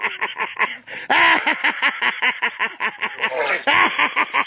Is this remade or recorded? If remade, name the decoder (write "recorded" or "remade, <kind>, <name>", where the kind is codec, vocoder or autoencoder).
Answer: recorded